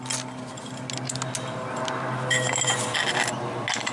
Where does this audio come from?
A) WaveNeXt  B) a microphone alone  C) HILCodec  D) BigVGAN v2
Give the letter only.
B